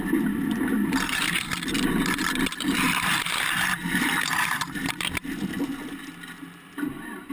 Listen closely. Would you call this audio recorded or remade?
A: remade